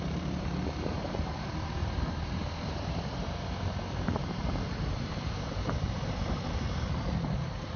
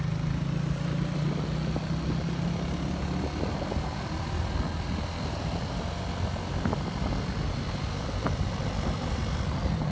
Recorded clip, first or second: second